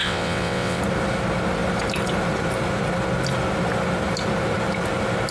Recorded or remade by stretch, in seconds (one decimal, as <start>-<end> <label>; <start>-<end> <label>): 0.0-0.8 remade; 0.8-5.3 recorded